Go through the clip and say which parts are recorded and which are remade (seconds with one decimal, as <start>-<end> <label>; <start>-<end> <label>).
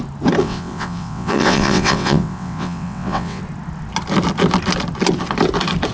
0.0-0.4 recorded; 0.4-3.4 remade; 3.4-5.9 recorded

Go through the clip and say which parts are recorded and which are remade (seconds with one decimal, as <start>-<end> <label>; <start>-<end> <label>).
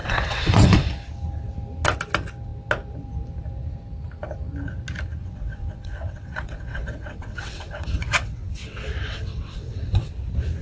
0.0-0.9 remade; 0.9-5.2 recorded; 5.2-10.1 remade; 10.1-10.6 recorded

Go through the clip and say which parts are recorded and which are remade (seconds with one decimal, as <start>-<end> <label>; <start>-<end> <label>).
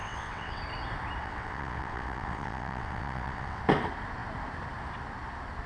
0.0-0.6 remade; 0.6-1.2 recorded; 1.2-3.6 remade; 3.6-5.7 recorded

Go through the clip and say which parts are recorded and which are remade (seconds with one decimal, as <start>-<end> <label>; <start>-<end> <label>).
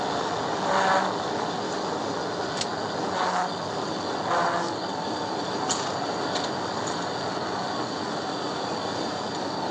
0.0-9.7 recorded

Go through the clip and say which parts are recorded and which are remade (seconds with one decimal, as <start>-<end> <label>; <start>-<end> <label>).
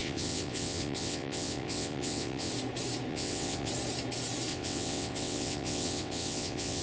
0.0-2.5 remade; 2.5-3.1 recorded; 3.1-3.7 remade; 3.7-4.5 recorded; 4.5-6.8 remade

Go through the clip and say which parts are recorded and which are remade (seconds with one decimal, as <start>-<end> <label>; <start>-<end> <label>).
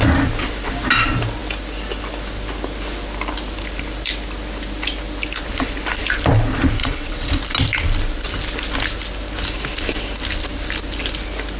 0.0-6.8 recorded; 6.8-7.3 remade; 7.3-11.6 recorded